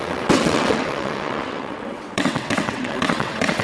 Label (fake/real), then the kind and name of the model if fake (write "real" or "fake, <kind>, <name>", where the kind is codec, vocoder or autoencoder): fake, vocoder, WaveNeXt